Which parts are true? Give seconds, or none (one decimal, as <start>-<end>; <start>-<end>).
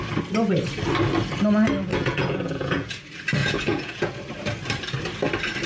0.0-1.9; 3.0-3.4; 4.1-5.7